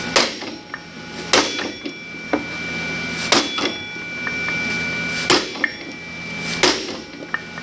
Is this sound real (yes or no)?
yes